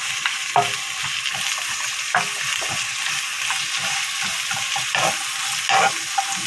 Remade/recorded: recorded